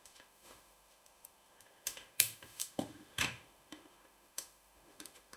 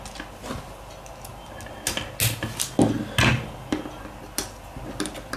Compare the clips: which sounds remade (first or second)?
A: first